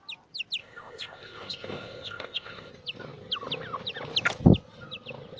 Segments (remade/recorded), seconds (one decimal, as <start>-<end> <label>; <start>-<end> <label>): 0.0-0.6 recorded; 0.6-2.7 remade; 2.7-5.4 recorded